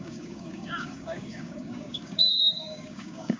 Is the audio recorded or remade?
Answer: remade